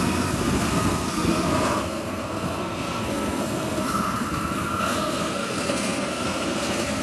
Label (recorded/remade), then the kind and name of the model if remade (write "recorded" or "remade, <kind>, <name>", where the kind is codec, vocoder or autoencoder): remade, codec, SNAC